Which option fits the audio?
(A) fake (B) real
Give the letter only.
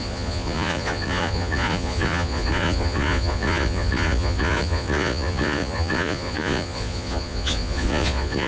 A